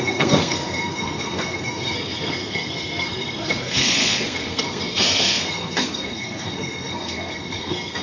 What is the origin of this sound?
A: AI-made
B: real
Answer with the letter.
A